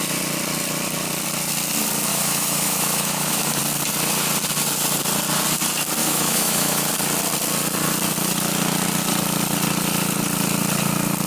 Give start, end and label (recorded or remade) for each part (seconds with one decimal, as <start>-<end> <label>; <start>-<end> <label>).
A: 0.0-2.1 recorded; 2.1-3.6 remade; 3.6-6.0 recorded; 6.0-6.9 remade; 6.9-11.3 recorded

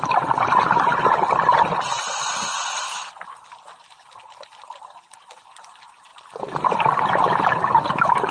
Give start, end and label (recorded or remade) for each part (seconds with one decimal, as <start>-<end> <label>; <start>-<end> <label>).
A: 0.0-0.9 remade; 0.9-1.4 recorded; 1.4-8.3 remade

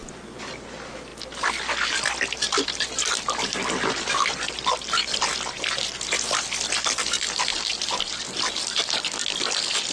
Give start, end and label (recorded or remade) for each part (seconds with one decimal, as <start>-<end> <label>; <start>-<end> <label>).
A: 0.0-9.9 recorded